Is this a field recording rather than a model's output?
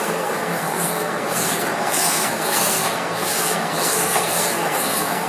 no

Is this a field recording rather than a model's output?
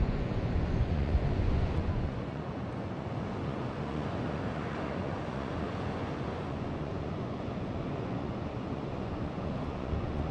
no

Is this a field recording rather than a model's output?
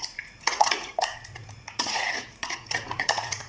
no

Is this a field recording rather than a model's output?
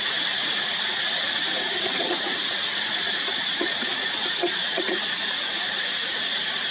no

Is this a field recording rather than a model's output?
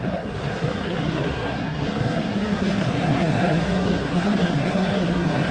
no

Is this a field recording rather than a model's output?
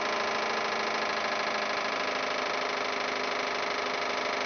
yes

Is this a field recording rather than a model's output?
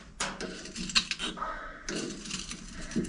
yes